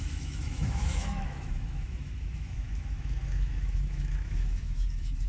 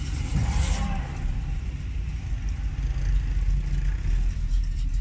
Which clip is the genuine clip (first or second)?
second